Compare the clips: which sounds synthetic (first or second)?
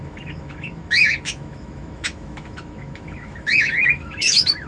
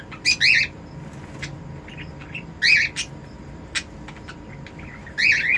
first